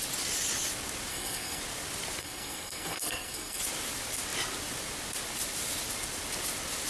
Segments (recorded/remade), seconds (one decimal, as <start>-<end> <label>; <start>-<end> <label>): 0.0-1.1 recorded; 1.1-1.6 remade; 1.6-2.2 recorded; 2.2-3.6 remade; 3.6-6.9 recorded

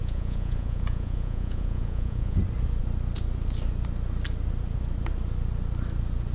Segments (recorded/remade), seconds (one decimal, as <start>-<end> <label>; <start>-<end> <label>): 0.0-2.4 remade; 2.4-6.3 recorded

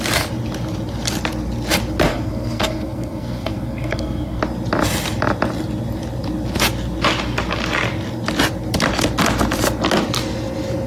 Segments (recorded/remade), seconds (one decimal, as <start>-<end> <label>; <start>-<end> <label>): 0.0-2.1 recorded; 2.1-4.4 remade; 4.4-10.9 recorded